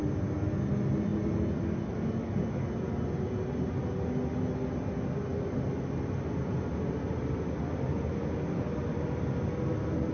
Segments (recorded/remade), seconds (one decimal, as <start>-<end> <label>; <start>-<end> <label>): 0.0-10.1 recorded